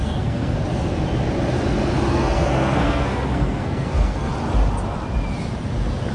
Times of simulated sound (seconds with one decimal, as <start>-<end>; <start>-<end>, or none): 0.0-0.6; 2.1-4.3